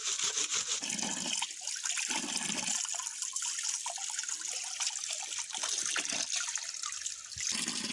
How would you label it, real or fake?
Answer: real